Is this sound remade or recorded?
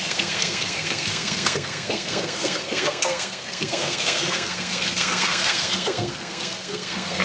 remade